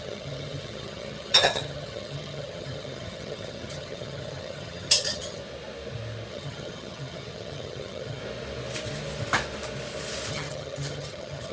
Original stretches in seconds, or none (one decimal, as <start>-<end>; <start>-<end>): 5.4-6.3; 8.2-10.3